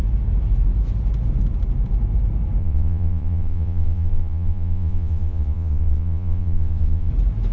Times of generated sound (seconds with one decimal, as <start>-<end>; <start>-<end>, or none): 2.6-7.1